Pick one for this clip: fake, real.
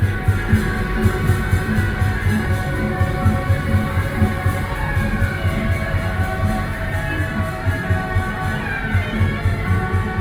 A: real